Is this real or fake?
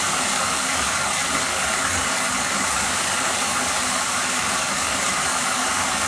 fake